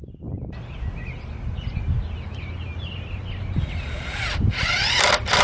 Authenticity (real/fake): real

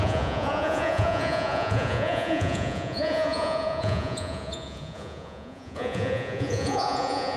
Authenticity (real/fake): fake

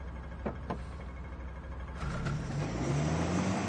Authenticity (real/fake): real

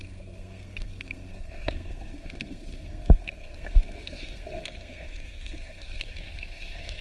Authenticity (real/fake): fake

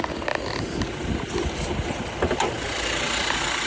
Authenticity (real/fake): real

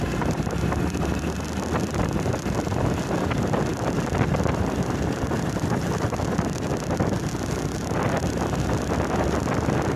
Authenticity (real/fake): real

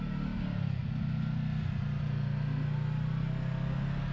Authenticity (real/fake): real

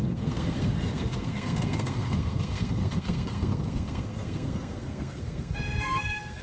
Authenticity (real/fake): fake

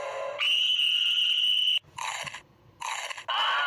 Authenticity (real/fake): real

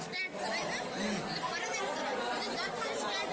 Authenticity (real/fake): real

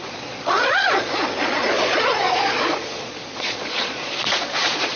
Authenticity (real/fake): fake